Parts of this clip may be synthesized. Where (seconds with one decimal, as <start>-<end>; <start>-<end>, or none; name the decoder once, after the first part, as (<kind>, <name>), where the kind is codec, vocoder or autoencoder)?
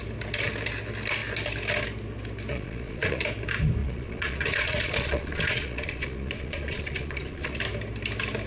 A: 2.5-3.2 (vocoder, Vocos); 3.8-7.6